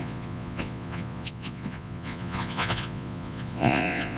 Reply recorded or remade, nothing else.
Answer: remade